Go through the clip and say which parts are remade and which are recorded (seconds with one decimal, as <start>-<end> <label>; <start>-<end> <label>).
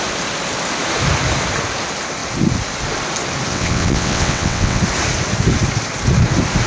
0.0-3.5 recorded; 3.5-4.8 remade; 4.8-6.7 recorded